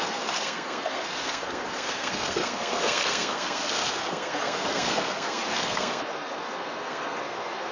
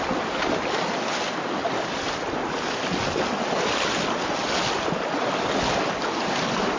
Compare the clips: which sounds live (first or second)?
second